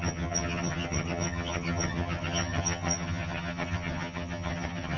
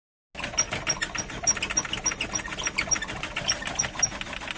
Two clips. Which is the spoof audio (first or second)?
first